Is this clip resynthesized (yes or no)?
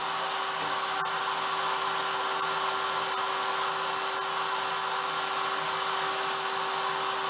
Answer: no